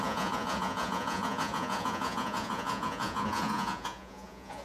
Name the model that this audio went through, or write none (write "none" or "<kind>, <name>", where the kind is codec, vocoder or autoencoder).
vocoder, Vocos